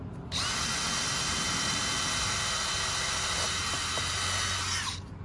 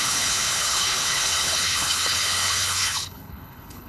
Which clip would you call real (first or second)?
first